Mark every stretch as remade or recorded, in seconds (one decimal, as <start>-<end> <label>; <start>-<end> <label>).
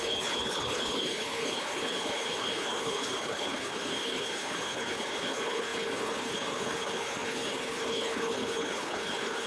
0.0-9.5 remade